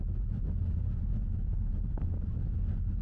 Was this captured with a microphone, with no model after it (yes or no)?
yes